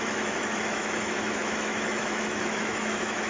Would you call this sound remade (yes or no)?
yes